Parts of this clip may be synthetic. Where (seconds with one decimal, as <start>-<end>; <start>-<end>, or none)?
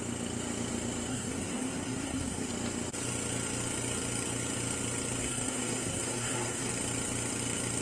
1.1-2.5; 5.2-6.7